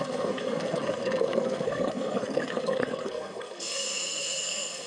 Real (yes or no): no